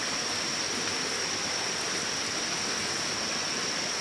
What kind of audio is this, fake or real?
real